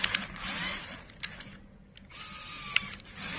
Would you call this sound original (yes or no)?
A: yes